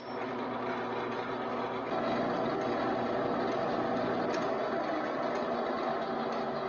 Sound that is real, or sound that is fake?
real